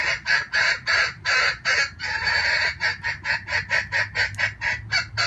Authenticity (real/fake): real